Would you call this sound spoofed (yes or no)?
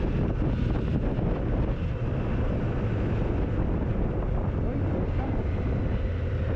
no